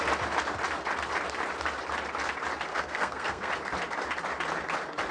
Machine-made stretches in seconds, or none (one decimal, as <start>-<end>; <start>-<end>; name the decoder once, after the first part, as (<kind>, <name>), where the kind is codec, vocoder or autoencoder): 2.7-3.5 (codec, SNAC)